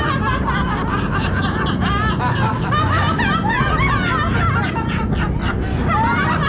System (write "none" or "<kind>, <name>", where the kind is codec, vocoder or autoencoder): none